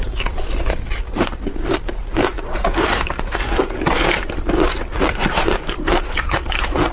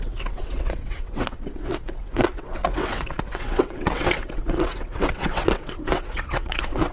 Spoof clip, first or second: second